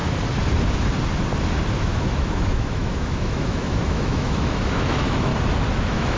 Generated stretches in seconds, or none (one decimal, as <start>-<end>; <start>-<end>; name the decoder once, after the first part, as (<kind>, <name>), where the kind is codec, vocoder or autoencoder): 1.8-5.3 (autoencoder, DAC-VAE); 5.8-6.2